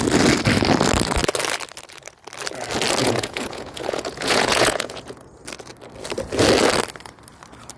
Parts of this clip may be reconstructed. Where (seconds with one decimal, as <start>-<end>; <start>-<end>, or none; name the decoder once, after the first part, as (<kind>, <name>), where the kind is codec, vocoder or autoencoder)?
3.0-5.3 (vocoder, Vocos)

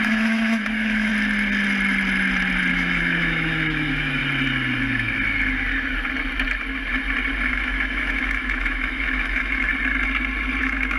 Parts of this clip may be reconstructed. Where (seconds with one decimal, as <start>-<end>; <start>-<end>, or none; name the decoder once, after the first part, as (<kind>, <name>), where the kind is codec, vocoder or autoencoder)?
0.0-1.1 (autoencoder, DAC-VAE); 2.7-4.2; 7.5-9.7; 10.6-11.0

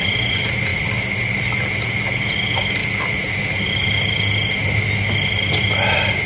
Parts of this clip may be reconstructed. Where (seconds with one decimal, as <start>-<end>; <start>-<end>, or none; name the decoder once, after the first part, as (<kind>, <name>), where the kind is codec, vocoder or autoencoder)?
0.7-1.4 (vocoder, BigVGAN v2); 2.8-5.6

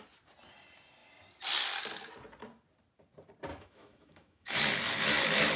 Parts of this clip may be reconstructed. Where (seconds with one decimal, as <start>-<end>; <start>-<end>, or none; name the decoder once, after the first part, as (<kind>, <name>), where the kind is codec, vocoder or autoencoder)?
3.5-4.6 (autoencoder, DAC-VAE)

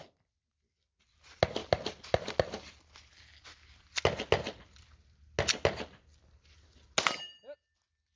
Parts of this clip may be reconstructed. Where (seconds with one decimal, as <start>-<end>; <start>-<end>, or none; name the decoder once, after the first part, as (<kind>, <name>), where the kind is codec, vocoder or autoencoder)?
none

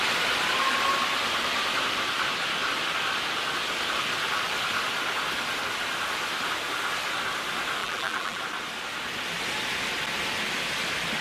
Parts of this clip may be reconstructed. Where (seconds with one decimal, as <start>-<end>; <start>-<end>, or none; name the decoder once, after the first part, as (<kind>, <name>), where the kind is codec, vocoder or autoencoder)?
7.8-8.4 (vocoder, BigVGAN v2)

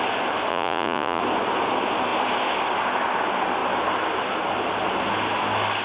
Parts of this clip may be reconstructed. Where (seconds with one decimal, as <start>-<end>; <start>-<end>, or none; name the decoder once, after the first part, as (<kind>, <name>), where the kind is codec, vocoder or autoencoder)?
0.5-1.2 (vocoder, Vocos)